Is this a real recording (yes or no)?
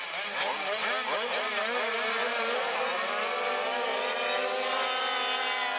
yes